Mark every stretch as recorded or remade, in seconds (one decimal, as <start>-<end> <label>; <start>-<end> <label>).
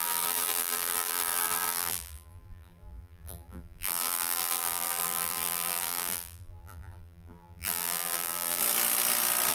0.0-8.6 remade; 8.6-9.5 recorded